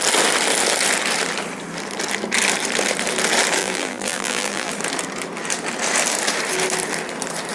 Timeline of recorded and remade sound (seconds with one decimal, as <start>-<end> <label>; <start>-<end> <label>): 0.0-3.6 recorded; 3.6-4.7 remade; 4.7-7.5 recorded